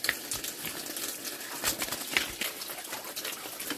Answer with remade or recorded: recorded